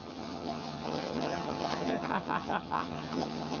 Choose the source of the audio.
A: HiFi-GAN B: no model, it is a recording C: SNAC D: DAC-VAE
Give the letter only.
A